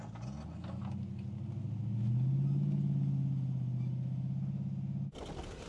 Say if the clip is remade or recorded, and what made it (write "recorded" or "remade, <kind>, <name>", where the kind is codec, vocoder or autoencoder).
recorded